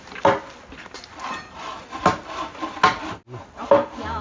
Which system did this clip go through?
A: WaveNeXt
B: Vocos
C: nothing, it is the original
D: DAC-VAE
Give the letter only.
C